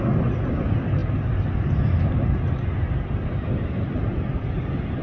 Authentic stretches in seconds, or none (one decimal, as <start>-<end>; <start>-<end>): 0.0-5.0